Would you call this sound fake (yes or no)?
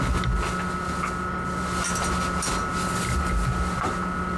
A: no